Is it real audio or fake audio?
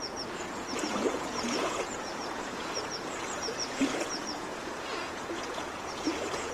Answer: fake